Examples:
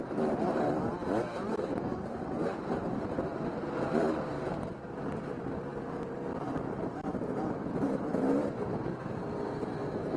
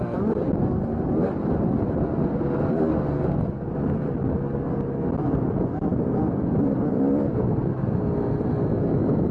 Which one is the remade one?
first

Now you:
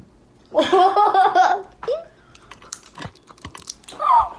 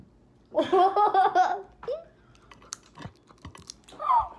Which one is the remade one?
first